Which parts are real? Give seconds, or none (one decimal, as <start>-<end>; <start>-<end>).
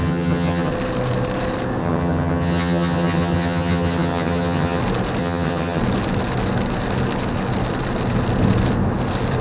0.7-1.8; 4.8-5.2; 5.8-9.4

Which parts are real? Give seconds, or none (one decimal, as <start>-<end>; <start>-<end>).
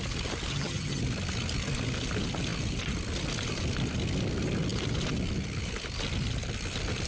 0.0-0.5; 1.0-7.1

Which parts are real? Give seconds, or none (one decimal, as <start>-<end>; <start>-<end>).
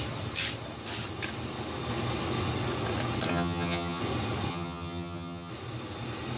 0.0-3.3; 4.0-4.5; 5.5-6.4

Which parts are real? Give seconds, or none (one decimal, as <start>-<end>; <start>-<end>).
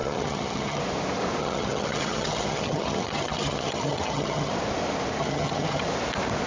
0.8-1.4; 4.5-5.2; 5.8-6.5